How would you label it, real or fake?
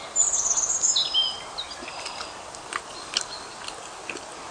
real